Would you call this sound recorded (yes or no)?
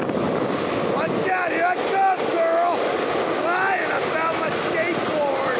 yes